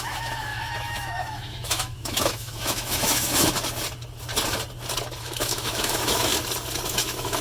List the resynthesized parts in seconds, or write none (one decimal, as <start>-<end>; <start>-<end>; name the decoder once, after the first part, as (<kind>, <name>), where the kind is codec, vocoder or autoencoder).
0.0-3.5 (autoencoder, DAC-VAE); 5.2-6.3; 6.9-7.4